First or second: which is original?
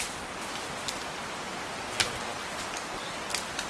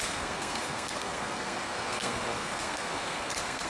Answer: first